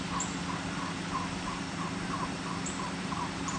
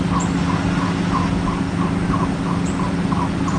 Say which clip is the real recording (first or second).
second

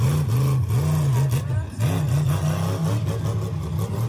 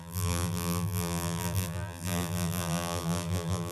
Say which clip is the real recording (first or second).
first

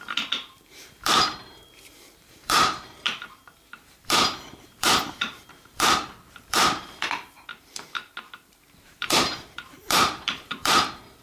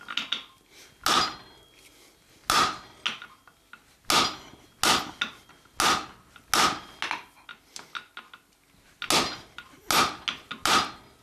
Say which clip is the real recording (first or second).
second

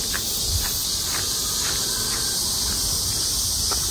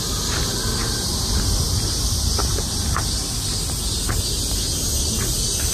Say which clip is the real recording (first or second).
second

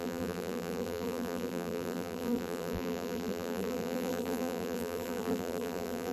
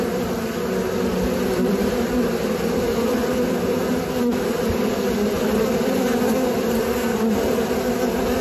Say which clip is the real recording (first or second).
second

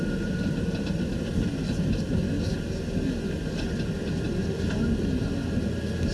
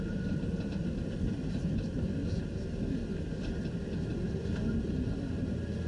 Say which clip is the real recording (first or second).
first